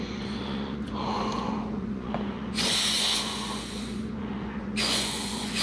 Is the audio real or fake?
fake